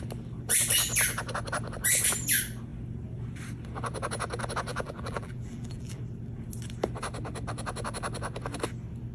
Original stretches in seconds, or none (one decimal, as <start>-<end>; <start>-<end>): 0.0-4.7; 6.0-9.1